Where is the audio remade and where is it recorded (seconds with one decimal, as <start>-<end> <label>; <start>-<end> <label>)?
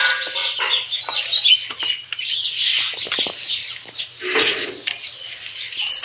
0.0-6.0 recorded